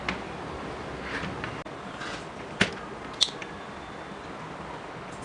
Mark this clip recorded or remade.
recorded